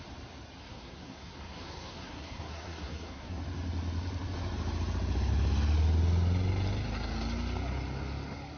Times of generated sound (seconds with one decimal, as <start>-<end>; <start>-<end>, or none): 0.6-3.4